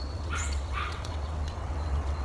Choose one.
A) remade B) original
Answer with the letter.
A